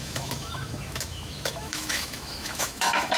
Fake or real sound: fake